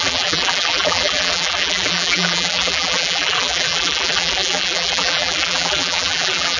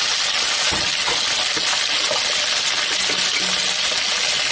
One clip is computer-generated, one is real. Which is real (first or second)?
second